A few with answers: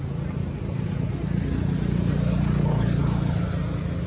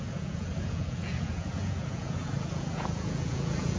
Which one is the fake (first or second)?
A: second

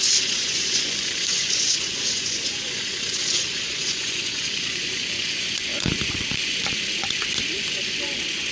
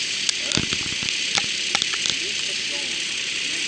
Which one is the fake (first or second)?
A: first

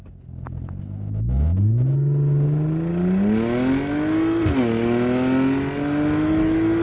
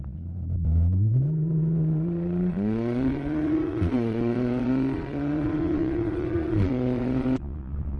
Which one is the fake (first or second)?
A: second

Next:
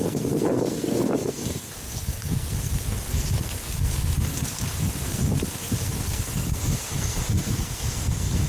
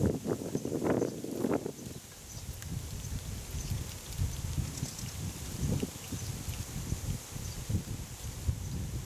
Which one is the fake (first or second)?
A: first